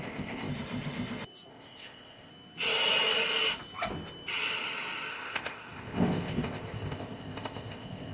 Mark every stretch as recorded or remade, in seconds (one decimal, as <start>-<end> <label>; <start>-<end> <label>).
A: 0.0-0.5 remade; 0.5-1.5 recorded; 1.5-2.3 remade; 2.3-5.1 recorded; 5.1-8.1 remade